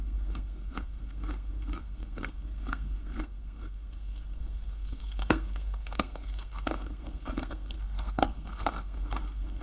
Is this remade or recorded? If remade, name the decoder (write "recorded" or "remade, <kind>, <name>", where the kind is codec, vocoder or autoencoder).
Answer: remade, codec, SNAC